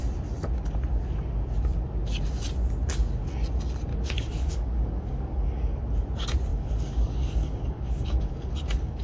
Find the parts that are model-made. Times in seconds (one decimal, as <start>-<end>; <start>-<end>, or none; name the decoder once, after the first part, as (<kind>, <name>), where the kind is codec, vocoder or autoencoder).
3.9-5.8 (codec, DAC); 6.5-9.0